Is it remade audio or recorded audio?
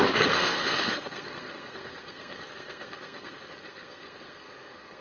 remade